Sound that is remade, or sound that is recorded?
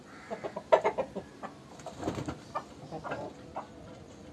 recorded